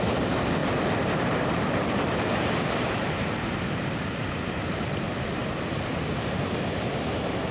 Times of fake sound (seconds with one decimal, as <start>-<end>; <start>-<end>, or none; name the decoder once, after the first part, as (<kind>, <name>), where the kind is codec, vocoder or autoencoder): 0.0-5.4 (vocoder, BigVGAN v2); 5.9-7.5